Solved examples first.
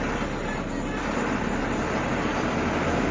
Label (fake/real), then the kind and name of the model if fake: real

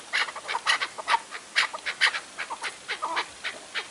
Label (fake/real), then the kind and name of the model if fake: real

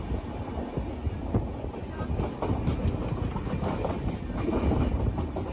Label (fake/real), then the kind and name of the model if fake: real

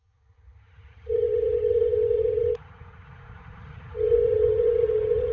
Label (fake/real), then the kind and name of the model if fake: fake, vocoder, HiFi-GAN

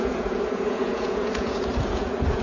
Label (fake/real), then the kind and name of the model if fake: fake, vocoder, Vocos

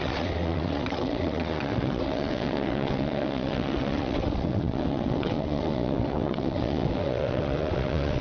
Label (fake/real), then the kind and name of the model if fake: fake, vocoder, WaveNeXt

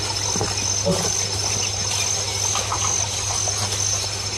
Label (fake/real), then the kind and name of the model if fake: real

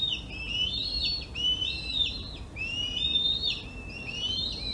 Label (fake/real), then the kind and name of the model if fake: real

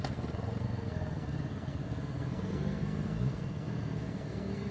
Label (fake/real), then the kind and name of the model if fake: fake, codec, SNAC